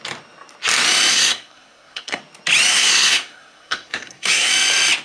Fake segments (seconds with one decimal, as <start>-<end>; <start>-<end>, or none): 1.1-2.2; 2.7-4.5